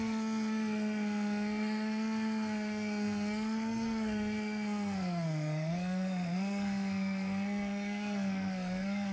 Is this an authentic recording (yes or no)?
no